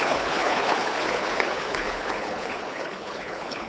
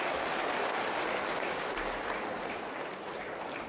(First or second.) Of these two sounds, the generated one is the first